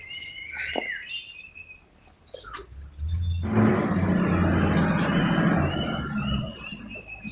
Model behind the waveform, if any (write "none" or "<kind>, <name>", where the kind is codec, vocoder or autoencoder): none